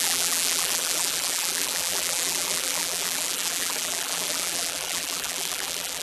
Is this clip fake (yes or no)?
yes